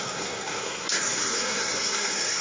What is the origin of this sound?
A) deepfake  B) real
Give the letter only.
A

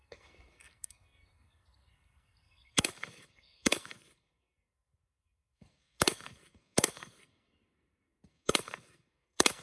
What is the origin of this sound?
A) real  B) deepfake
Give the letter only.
B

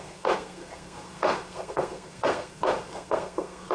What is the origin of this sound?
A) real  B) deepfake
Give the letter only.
B